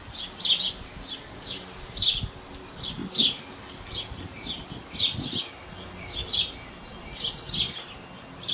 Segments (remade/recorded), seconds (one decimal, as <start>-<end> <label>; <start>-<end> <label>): 0.0-8.5 recorded